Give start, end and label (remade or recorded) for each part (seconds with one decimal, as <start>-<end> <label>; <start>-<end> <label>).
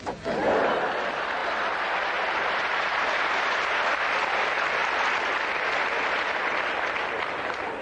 0.0-7.8 recorded